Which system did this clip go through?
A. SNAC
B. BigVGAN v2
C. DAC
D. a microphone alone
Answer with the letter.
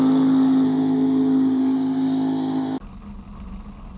D